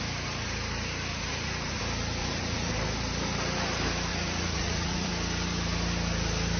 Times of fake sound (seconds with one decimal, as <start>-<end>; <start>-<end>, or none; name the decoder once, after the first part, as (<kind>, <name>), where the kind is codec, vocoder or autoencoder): 1.1-1.8 (vocoder, Vocos); 2.2-2.7; 4.1-5.1